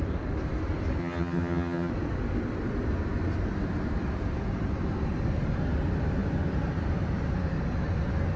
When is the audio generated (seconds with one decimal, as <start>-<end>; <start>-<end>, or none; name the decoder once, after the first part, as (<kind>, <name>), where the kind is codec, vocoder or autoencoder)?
1.0-1.9 (vocoder, HiFi-GAN)

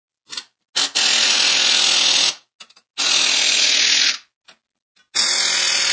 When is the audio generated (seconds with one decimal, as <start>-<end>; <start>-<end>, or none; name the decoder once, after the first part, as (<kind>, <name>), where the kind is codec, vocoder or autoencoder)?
none

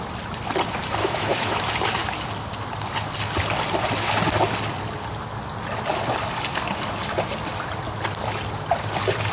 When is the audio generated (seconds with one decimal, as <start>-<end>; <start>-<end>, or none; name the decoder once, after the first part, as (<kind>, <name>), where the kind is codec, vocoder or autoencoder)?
1.0-1.6 (autoencoder, DAC-VAE)